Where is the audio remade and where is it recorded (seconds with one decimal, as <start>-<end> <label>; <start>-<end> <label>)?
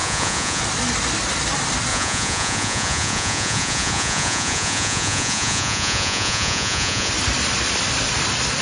0.0-0.6 remade; 0.6-1.9 recorded; 1.9-7.1 remade; 7.1-8.6 recorded